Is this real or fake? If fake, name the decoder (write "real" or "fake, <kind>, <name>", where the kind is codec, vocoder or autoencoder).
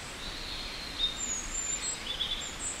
real